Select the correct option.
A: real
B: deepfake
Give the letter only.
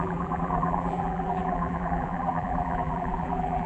B